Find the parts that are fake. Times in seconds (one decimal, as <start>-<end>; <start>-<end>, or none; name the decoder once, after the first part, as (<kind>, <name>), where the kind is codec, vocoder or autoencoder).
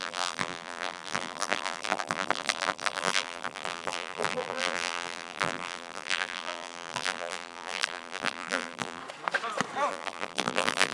0.0-9.0 (vocoder, BigVGAN v2); 9.9-10.9